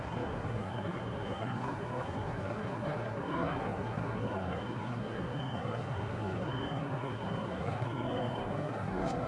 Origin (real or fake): fake